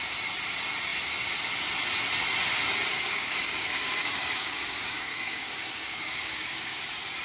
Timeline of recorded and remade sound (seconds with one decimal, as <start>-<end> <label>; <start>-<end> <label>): 0.0-2.9 recorded; 2.9-6.8 remade; 6.8-7.2 recorded